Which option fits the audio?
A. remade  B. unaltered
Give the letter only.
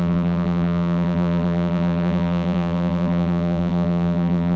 A